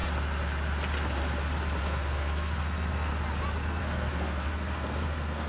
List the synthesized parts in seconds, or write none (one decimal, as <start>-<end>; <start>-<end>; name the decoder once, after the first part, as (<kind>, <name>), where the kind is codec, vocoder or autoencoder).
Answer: 1.8-3.1 (codec, SNAC); 3.7-5.5